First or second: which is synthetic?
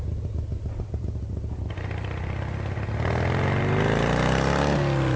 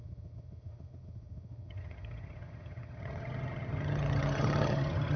second